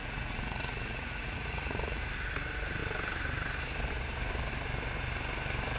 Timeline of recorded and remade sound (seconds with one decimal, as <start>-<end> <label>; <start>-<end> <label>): 0.0-2.0 remade; 2.0-5.8 recorded